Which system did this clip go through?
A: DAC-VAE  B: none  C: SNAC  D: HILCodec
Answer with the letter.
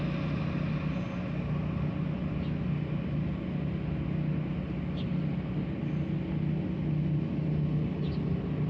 B